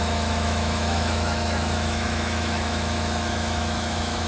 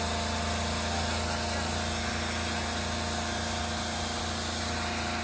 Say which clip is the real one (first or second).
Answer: second